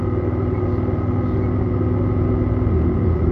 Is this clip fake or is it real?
real